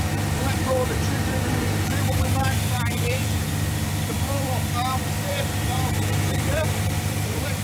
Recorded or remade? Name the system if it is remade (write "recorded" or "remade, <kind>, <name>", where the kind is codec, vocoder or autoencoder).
remade, vocoder, BigVGAN v2